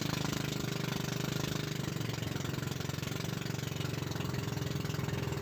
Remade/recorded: recorded